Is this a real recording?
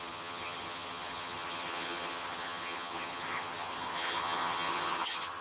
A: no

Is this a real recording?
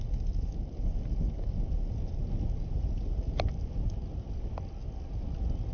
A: yes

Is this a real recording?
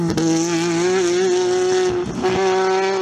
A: yes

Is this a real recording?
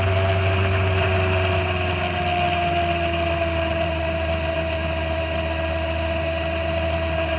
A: yes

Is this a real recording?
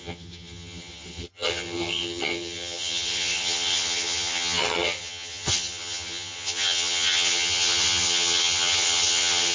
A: no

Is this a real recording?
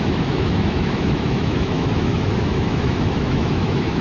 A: no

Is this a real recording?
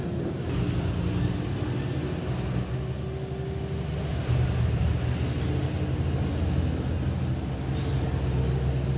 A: yes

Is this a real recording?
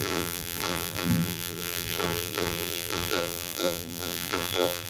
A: no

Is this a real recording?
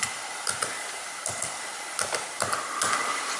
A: yes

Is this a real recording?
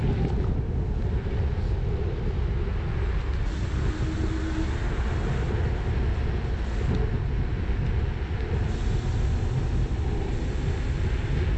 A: yes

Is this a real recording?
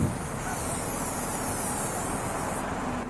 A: yes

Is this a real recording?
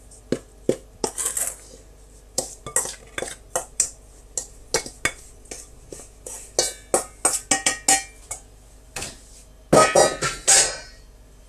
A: yes